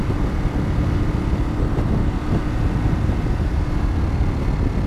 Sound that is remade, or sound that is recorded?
recorded